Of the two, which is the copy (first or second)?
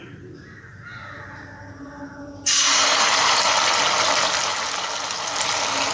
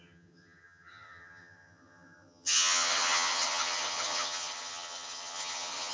second